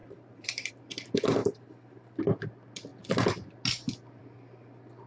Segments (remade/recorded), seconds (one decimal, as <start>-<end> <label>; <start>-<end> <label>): 0.0-0.7 remade; 0.7-1.4 recorded; 1.4-2.2 remade; 2.2-5.1 recorded